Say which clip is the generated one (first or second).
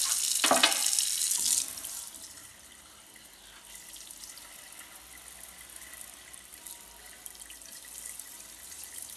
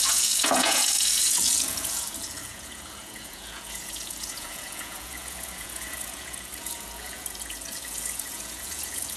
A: second